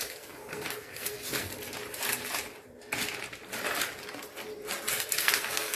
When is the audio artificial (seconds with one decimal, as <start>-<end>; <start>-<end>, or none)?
0.0-1.5; 4.9-5.7